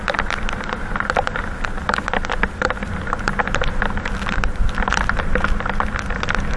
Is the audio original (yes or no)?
yes